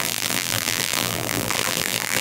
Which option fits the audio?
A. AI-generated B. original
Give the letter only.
A